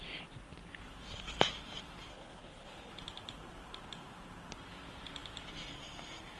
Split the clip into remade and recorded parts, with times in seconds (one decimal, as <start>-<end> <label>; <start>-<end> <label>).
0.0-2.1 recorded; 2.1-2.9 remade; 2.9-6.4 recorded

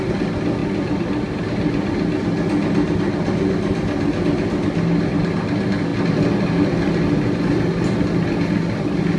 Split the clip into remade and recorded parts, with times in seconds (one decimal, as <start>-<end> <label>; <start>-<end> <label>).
0.0-9.2 recorded

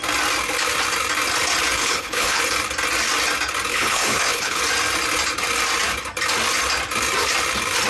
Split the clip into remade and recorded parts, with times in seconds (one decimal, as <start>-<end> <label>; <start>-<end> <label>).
0.0-1.8 recorded; 1.8-2.4 remade; 2.4-3.7 recorded; 3.7-4.6 remade; 4.6-7.9 recorded

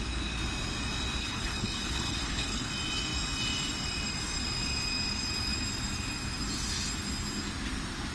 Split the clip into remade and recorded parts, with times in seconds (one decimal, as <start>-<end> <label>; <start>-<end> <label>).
0.0-1.2 recorded; 1.2-2.7 remade; 2.7-8.1 recorded

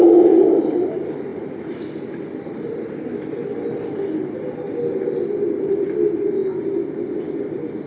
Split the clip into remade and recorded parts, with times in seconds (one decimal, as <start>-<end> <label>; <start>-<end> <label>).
0.0-7.9 recorded